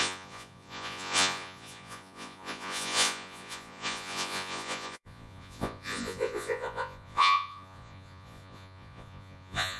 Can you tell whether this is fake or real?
fake